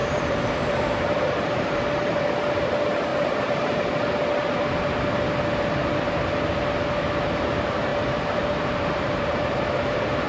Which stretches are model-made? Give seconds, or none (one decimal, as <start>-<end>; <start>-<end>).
0.0-1.8; 3.1-3.9; 7.9-9.9